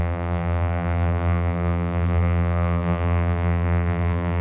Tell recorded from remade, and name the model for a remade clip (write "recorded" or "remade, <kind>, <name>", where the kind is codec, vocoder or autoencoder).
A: remade, vocoder, BigVGAN v2